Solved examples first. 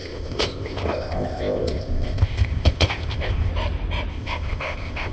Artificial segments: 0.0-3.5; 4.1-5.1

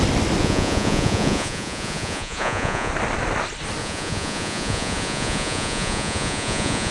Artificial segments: 0.4-2.9; 3.8-6.9

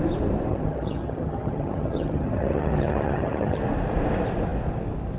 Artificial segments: 0.5-3.6

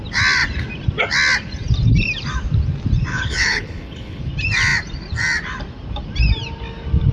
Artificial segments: 3.1-4.2

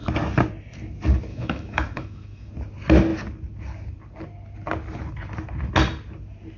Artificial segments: 1.3-2.5

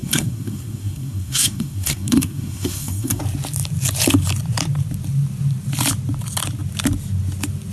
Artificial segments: 0.0-3.2

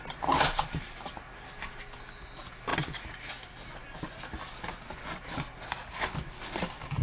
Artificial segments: none